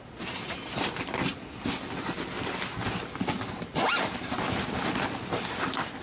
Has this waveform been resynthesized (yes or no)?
no